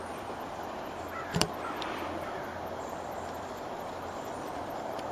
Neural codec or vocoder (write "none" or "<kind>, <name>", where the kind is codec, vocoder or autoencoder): vocoder, BigVGAN v2